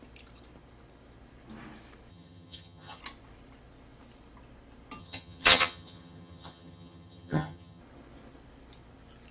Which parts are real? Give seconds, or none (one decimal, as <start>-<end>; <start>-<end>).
0.0-2.1; 3.0-5.0; 7.8-9.3